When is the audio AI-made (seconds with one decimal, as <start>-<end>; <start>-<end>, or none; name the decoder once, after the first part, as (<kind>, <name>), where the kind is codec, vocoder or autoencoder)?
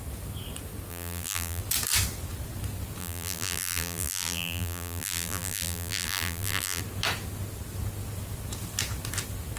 0.9-1.6 (vocoder, BigVGAN v2); 3.0-6.8